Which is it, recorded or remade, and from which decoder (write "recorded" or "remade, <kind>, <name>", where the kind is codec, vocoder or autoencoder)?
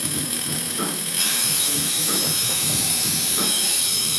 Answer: remade, autoencoder, DAC-VAE